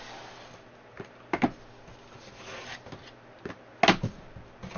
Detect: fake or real real